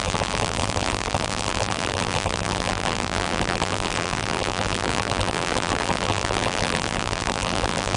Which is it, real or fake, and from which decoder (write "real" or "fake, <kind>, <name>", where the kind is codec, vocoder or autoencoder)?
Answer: fake, vocoder, BigVGAN v2